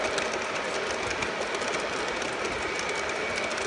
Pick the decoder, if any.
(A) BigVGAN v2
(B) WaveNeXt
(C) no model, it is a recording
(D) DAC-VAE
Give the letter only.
C